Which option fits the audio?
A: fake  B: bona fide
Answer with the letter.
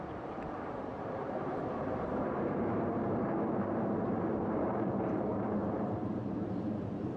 A